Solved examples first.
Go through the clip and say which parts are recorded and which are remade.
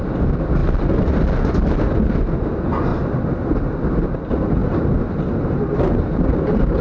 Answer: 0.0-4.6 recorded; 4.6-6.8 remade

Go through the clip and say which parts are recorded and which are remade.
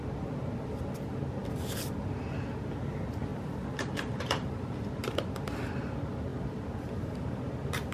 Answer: 0.0-3.3 recorded; 3.3-5.4 remade; 5.4-7.9 recorded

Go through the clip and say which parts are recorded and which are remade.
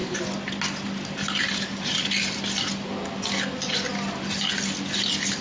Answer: 0.0-5.4 recorded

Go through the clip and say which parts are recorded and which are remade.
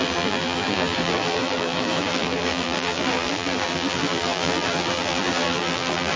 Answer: 0.0-6.2 remade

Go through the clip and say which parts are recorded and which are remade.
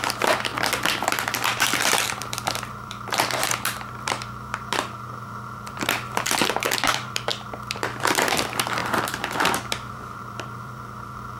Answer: 0.0-0.5 remade; 0.5-1.1 recorded; 1.1-11.4 remade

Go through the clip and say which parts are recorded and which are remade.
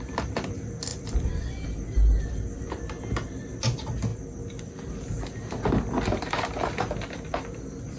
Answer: 0.0-0.9 recorded; 0.9-1.5 remade; 1.5-8.0 recorded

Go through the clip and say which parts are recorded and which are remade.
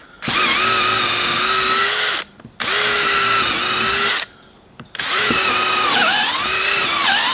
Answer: 0.0-4.1 recorded; 4.1-7.3 remade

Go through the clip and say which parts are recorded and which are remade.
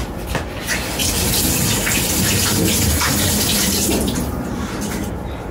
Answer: 0.0-5.5 recorded